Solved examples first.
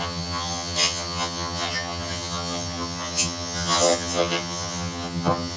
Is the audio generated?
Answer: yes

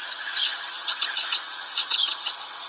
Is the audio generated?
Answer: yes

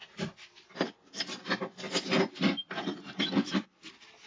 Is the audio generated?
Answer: no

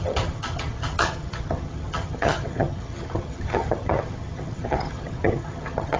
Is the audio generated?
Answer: yes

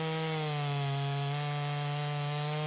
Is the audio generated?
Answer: no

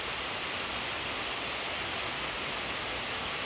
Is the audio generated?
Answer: no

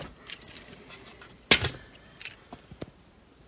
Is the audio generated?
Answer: no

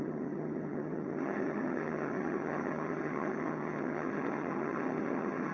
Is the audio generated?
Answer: yes